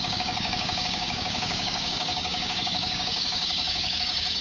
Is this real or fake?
fake